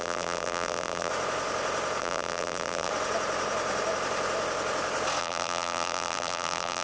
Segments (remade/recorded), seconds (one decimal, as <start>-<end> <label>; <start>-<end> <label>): 0.0-1.1 remade; 1.1-2.0 recorded; 2.0-2.9 remade; 2.9-5.2 recorded; 5.2-6.8 remade